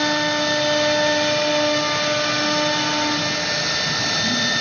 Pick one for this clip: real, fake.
real